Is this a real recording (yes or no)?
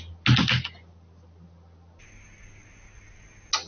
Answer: yes